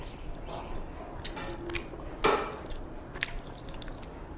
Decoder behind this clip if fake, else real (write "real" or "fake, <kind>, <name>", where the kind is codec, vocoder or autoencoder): real